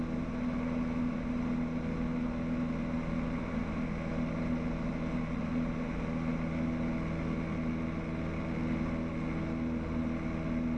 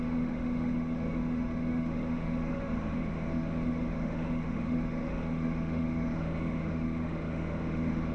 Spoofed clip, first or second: second